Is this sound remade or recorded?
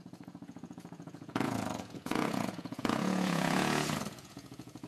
remade